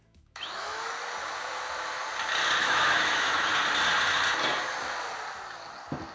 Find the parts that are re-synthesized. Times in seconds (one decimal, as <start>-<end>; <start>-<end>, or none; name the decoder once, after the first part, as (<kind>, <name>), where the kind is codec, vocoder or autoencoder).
0.0-1.0 (autoencoder, DAC-VAE); 2.6-3.5